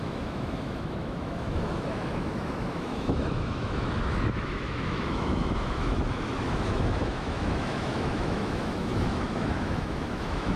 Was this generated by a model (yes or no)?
yes